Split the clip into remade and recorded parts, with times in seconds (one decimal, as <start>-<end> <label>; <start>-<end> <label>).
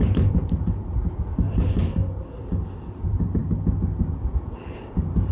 0.0-0.9 remade; 0.9-1.6 recorded; 1.6-2.0 remade; 2.0-2.8 recorded; 2.8-3.4 remade; 3.4-4.0 recorded; 4.0-5.3 remade